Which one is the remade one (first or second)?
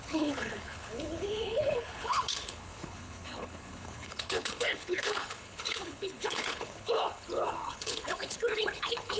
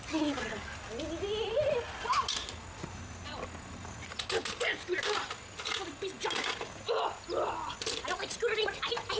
first